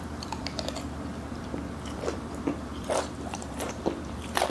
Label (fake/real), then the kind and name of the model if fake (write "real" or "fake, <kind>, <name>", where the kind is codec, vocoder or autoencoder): fake, vocoder, BigVGAN v2